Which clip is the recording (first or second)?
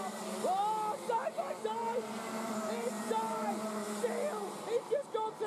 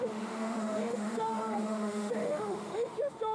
first